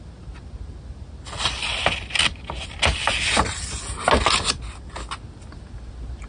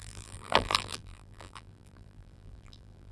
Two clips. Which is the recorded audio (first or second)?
first